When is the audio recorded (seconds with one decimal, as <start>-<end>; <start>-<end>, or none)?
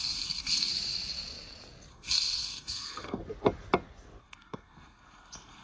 0.7-1.9; 3.2-4.2